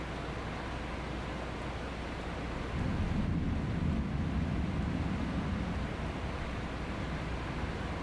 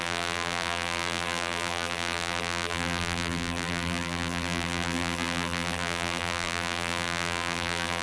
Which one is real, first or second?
first